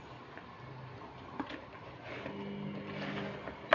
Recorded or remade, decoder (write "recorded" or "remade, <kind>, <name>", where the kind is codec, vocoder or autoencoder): recorded